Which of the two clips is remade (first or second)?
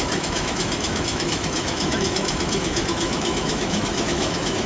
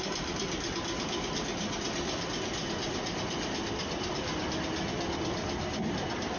first